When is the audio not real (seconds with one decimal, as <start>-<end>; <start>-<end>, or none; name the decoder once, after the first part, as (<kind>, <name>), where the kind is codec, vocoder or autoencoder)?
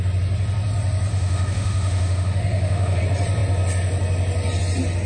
1.1-3.0 (autoencoder, DAC-VAE)